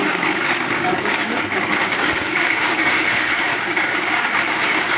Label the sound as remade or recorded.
remade